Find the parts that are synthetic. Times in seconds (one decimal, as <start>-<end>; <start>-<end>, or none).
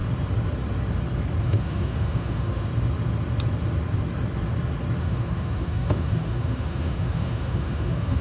1.4-2.7; 5.0-8.2